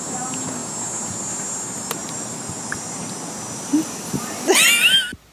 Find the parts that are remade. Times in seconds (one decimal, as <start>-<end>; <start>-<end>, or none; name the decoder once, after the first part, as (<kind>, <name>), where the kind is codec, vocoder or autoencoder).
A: none